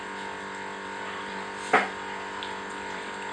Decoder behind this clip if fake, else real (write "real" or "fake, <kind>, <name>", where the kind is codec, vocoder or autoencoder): fake, vocoder, BigVGAN v2